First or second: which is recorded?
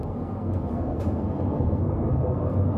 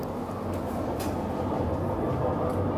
second